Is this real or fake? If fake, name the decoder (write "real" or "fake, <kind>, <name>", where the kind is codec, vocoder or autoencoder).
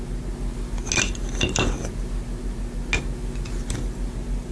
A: real